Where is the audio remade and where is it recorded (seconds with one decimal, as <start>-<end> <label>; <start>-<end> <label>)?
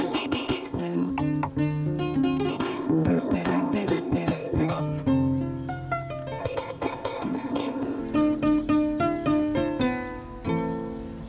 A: 0.0-1.1 remade; 1.1-2.5 recorded; 2.5-4.8 remade; 4.8-6.4 recorded; 6.4-8.0 remade; 8.0-11.3 recorded